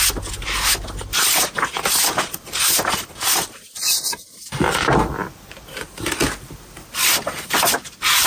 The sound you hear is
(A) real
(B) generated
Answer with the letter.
A